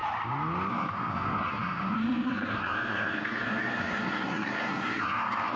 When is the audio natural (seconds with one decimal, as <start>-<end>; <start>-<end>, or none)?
0.0-0.7